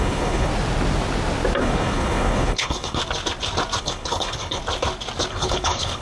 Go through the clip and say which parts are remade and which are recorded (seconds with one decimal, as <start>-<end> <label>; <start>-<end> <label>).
0.0-0.5 remade; 0.5-1.6 recorded; 1.6-3.0 remade; 3.0-3.8 recorded; 3.8-4.6 remade; 4.6-5.3 recorded; 5.3-6.0 remade